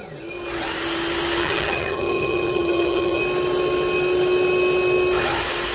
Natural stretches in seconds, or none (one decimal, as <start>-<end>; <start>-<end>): 0.0-1.4; 3.2-5.7